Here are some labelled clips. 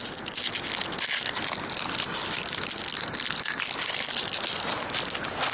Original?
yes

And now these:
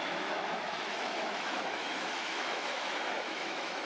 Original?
no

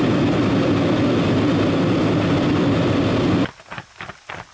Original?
yes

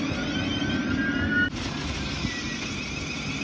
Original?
yes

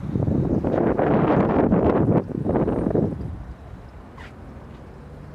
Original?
yes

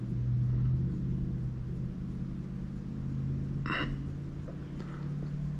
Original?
yes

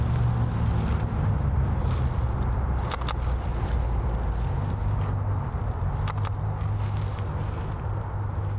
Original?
yes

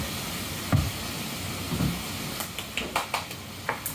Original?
yes